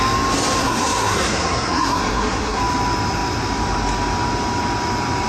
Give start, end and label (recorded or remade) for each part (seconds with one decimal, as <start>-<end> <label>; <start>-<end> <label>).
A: 0.0-0.6 recorded; 0.6-2.6 remade; 2.6-5.3 recorded